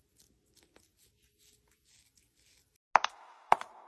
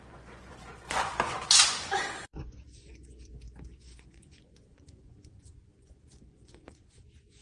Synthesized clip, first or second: second